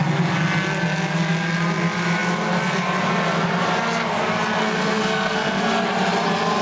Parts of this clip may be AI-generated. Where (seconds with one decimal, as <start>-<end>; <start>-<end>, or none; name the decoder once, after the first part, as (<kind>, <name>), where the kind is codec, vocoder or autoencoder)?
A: 4.6-5.6 (codec, SNAC)